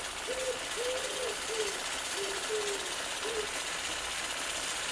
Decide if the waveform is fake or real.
real